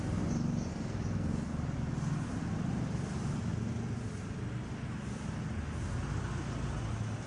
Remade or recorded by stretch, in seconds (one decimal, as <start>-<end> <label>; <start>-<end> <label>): 0.0-0.7 recorded; 0.7-1.5 remade; 1.5-7.3 recorded